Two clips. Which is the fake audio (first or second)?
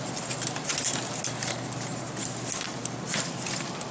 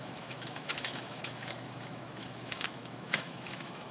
second